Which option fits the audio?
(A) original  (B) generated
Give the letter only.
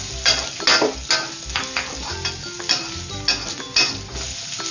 A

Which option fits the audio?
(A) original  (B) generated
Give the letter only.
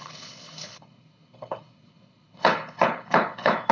B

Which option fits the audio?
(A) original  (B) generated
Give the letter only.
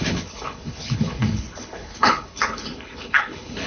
B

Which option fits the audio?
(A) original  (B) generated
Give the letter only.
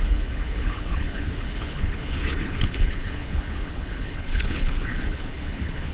B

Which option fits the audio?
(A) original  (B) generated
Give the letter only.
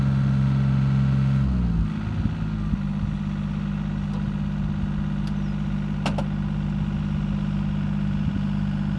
A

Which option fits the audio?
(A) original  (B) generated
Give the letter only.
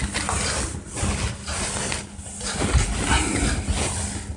A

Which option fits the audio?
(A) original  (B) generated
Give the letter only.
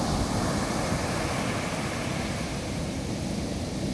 A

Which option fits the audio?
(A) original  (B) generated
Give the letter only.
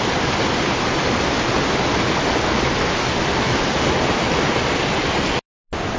A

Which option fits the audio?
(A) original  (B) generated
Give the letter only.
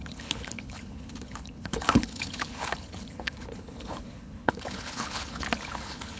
B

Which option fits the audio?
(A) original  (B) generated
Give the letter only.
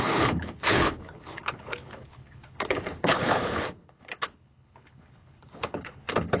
B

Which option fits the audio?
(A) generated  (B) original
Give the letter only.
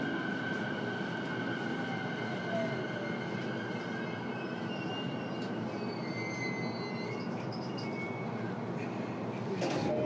B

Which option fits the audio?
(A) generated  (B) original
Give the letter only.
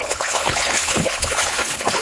A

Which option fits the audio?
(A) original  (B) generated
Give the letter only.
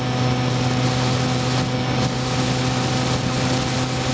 A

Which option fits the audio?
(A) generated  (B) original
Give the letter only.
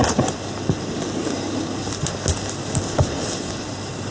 B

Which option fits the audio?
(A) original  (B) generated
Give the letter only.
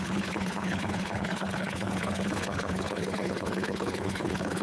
B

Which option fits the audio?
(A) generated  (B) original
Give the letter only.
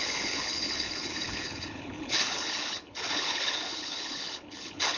A